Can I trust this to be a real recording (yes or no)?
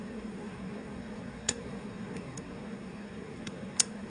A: no